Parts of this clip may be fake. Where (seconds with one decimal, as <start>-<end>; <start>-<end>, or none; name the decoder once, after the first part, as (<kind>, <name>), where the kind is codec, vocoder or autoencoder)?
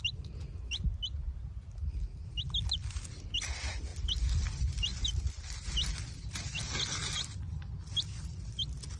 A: none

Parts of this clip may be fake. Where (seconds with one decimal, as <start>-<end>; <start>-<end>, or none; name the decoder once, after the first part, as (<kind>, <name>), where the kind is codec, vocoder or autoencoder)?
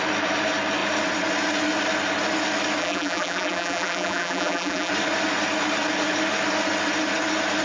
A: 2.8-4.9 (vocoder, BigVGAN v2)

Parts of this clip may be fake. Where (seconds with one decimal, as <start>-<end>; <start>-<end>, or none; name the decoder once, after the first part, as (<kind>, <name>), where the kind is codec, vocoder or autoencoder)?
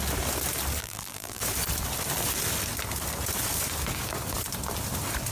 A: 0.8-1.4 (vocoder, BigVGAN v2)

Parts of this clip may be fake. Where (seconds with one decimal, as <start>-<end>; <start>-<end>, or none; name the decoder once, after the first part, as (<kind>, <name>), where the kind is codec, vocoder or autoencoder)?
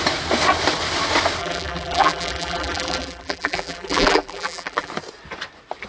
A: 1.4-4.9 (vocoder, BigVGAN v2)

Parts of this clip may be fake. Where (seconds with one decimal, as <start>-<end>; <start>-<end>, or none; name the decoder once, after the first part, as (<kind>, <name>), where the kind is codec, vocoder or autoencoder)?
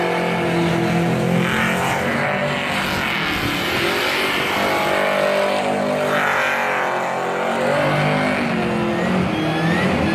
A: none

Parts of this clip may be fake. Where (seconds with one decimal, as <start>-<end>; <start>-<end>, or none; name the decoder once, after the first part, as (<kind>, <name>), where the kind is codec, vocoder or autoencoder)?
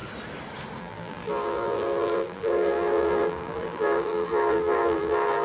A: 0.8-5.4 (vocoder, BigVGAN v2)